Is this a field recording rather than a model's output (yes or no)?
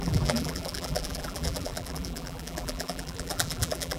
no